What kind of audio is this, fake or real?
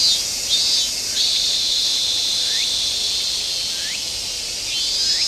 real